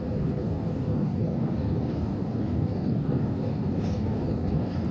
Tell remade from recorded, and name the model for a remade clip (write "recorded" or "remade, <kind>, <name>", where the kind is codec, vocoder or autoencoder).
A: remade, codec, DAC